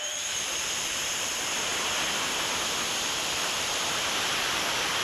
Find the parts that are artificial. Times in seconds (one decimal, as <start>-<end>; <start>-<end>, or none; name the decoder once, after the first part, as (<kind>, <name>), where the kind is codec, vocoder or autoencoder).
0.0-1.7 (vocoder, BigVGAN v2); 3.0-5.0